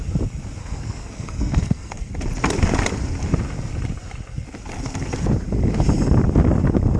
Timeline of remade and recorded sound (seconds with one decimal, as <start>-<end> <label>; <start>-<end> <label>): 0.0-0.6 recorded; 0.6-2.1 remade; 2.1-7.0 recorded